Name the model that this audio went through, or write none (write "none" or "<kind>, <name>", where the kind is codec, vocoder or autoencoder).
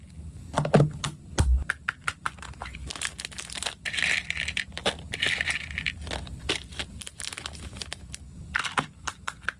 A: none